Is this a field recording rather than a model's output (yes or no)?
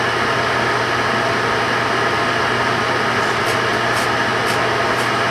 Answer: yes